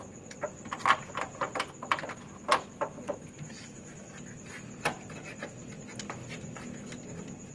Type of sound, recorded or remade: recorded